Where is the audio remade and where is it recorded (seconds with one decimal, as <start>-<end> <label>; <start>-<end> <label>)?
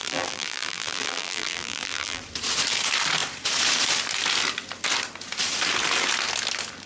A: 0.0-2.2 remade; 2.2-6.9 recorded